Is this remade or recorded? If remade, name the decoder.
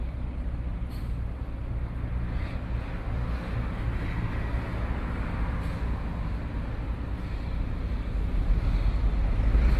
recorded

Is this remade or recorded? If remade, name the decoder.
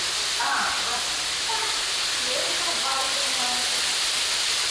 recorded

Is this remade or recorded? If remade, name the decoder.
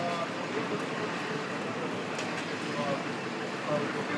recorded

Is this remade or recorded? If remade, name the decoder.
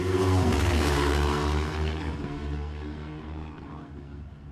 remade, codec, SNAC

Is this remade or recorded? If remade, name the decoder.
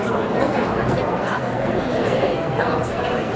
remade, codec, SNAC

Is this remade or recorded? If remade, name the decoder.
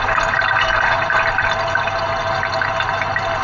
recorded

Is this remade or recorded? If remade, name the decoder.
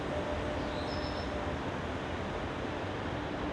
recorded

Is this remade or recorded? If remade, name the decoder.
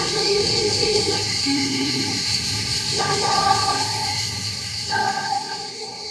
remade, codec, SNAC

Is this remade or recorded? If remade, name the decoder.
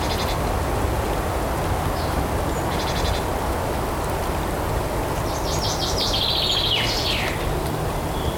recorded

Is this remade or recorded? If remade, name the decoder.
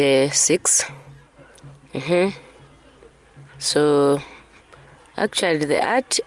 recorded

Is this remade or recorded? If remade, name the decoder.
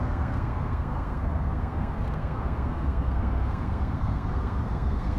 remade, codec, SNAC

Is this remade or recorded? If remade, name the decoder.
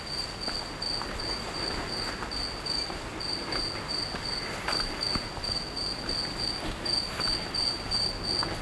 recorded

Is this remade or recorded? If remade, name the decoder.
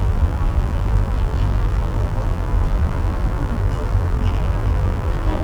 remade, vocoder, BigVGAN v2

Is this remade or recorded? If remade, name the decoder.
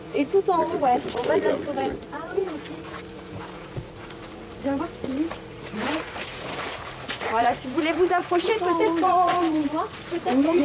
remade, vocoder, Vocos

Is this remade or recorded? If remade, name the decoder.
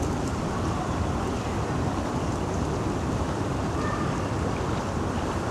remade, vocoder, BigVGAN v2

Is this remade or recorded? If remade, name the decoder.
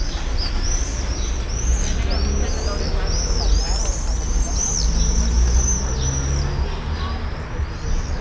recorded